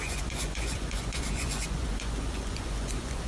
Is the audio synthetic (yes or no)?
yes